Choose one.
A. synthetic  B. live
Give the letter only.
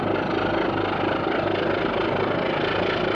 B